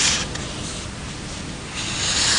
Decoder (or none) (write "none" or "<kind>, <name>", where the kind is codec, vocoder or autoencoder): none